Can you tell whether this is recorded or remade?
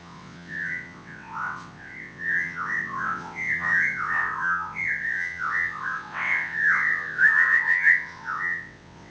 remade